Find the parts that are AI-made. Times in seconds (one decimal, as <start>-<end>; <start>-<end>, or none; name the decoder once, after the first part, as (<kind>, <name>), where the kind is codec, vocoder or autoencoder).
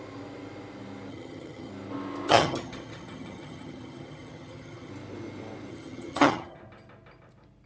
1.1-1.7 (vocoder, HiFi-GAN); 2.3-4.9; 5.7-6.6